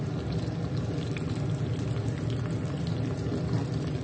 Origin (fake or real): real